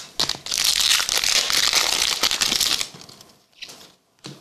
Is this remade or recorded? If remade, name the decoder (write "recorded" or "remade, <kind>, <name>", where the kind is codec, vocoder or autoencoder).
recorded